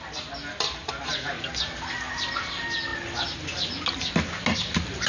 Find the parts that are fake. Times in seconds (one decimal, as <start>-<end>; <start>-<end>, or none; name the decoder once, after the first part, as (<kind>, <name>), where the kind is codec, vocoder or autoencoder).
none